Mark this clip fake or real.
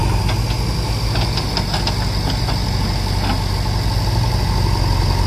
real